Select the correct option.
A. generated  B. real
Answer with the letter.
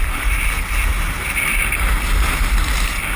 B